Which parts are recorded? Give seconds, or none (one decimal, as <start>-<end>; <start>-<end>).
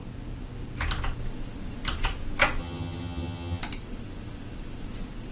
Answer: 0.0-2.6; 3.6-5.3